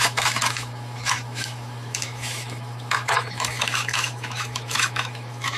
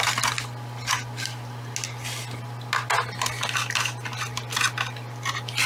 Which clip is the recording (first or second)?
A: second